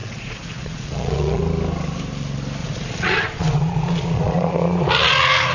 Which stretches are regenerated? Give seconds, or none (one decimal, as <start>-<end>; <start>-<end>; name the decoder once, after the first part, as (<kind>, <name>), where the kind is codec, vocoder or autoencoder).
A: 0.0-1.4 (vocoder, Vocos); 2.6-4.9